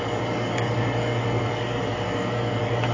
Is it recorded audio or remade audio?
remade